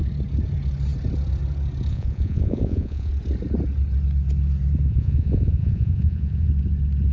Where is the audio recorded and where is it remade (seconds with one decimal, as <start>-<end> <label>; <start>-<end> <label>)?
0.0-1.9 recorded; 1.9-3.1 remade; 3.1-4.9 recorded; 4.9-6.5 remade; 6.5-7.1 recorded